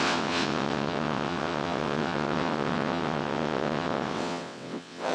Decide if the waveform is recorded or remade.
remade